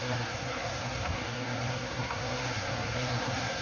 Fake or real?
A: fake